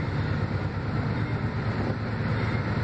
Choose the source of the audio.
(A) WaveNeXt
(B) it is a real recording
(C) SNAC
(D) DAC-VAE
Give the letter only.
B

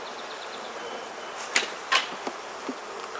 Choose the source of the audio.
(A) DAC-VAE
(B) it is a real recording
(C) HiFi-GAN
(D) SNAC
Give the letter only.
B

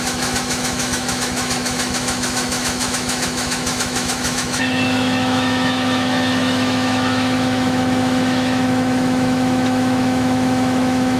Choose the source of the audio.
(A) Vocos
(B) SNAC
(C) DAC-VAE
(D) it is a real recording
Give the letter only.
C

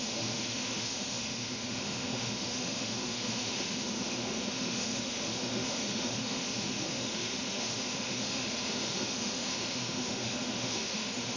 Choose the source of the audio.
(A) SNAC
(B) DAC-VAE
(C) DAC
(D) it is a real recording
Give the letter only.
B